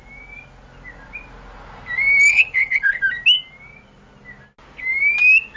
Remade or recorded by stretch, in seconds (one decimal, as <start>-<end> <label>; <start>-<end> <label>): 0.0-2.3 recorded; 2.3-3.0 remade; 3.0-5.6 recorded